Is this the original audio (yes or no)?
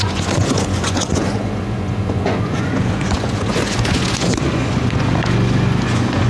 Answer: no